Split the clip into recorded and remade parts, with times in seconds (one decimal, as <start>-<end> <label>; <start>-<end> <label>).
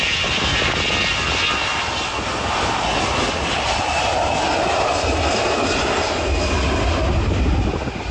0.0-8.1 recorded